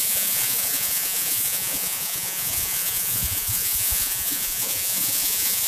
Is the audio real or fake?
fake